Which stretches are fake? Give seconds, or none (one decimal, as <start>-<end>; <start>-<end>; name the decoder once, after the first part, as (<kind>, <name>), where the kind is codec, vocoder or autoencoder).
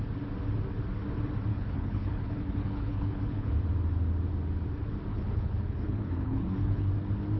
1.5-3.5 (codec, HILCodec); 5.1-6.9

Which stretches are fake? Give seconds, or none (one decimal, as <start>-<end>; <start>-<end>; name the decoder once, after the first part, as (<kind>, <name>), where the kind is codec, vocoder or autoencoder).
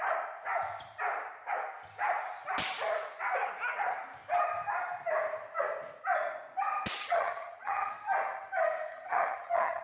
7.0-7.9 (vocoder, HiFi-GAN); 8.9-9.8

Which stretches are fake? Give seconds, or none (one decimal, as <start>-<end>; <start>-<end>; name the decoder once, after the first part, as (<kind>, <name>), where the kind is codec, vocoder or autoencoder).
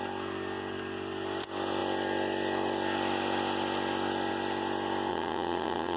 5.1-6.0 (vocoder, WaveNeXt)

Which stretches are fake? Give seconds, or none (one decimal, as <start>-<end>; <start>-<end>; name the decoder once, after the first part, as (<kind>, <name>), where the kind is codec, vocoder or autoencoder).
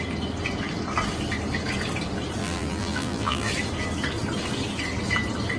2.4-3.5 (vocoder, BigVGAN v2)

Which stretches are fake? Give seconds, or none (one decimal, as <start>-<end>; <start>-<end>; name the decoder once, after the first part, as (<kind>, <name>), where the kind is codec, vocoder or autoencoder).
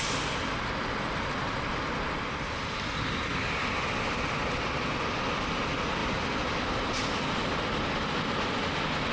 none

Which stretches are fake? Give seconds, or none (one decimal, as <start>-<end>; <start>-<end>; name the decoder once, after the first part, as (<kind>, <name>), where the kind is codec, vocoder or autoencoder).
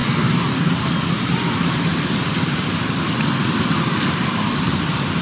1.9-5.2 (vocoder, BigVGAN v2)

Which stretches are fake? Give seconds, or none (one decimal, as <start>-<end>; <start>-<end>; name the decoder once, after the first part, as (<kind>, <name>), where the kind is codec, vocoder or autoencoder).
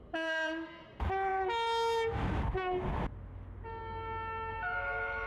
0.0-1.3 (vocoder, BigVGAN v2); 4.5-5.3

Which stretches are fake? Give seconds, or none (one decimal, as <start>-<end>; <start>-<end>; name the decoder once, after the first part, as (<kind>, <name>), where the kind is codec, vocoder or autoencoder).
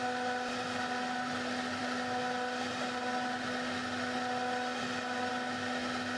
none